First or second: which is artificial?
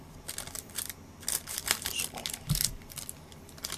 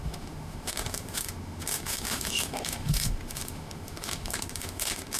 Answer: second